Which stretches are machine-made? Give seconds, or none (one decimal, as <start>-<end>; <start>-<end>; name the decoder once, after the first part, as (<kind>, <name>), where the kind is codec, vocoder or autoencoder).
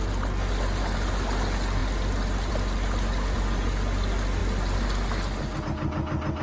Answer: none